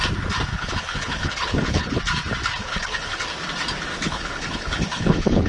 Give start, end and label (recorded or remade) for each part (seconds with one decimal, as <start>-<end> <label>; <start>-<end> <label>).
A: 0.0-0.5 recorded; 0.5-2.0 remade; 2.0-2.6 recorded; 2.6-3.2 remade; 3.2-3.9 recorded; 3.9-5.5 remade